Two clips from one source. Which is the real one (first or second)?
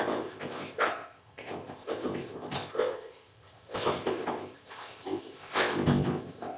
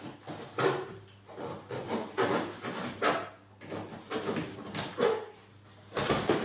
second